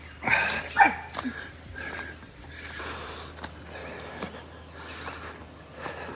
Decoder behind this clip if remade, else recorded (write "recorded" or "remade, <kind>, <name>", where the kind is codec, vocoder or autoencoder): recorded